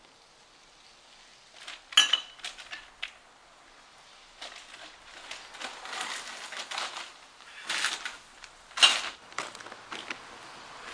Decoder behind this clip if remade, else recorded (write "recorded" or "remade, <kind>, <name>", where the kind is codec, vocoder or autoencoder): recorded